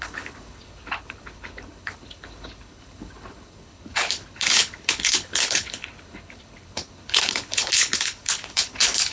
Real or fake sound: fake